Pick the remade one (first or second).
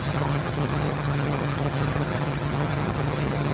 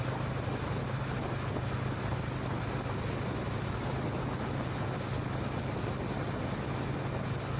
first